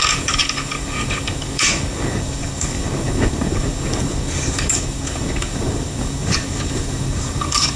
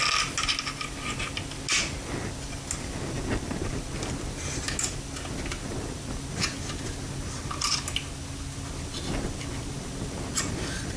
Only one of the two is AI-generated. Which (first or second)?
first